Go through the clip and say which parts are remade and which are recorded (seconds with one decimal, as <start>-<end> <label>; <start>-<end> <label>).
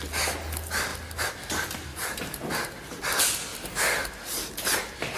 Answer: 0.0-1.9 recorded; 1.9-3.0 remade; 3.0-5.2 recorded